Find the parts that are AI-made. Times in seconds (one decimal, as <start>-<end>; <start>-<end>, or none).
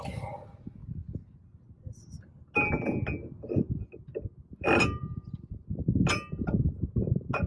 none